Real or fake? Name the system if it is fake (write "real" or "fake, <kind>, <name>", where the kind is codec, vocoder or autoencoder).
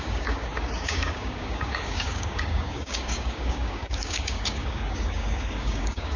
fake, codec, DAC